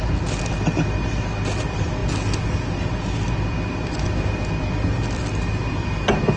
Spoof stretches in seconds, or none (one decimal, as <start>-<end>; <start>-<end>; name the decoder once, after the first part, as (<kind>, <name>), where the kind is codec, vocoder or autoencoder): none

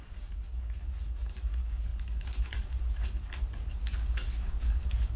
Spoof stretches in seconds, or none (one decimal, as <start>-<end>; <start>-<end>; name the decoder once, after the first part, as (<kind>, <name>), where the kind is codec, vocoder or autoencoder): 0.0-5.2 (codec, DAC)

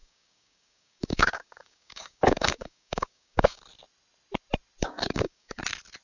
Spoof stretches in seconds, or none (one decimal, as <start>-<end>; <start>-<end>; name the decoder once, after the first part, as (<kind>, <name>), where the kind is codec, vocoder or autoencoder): 0.0-3.6 (codec, DAC); 4.8-5.6